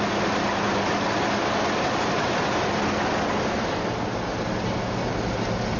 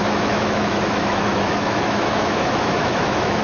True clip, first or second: first